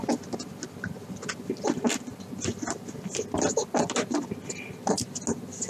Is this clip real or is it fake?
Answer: real